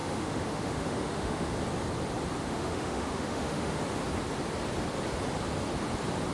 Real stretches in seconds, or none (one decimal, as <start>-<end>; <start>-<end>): 1.5-2.4; 3.8-6.3